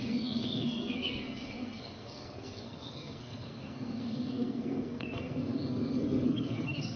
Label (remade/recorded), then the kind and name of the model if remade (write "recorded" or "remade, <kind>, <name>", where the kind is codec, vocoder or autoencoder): remade, codec, SNAC